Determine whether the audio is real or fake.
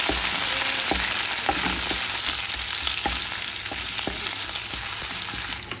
real